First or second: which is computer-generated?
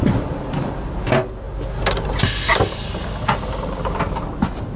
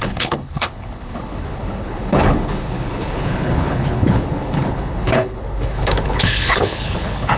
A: second